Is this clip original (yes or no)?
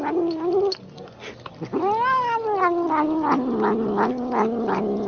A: yes